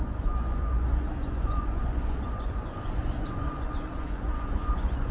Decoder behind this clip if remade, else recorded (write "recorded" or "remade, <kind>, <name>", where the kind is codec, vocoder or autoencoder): remade, vocoder, Vocos